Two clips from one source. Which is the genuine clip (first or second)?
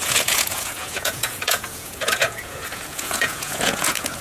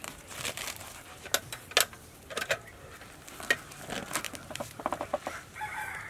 second